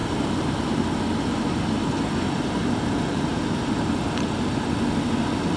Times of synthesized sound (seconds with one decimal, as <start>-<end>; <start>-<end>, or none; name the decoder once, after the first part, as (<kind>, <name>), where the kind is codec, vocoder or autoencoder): 1.3-4.7 (vocoder, BigVGAN v2)